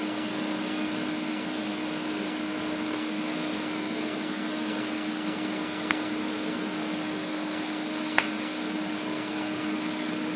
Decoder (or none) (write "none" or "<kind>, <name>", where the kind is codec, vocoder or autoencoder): codec, SNAC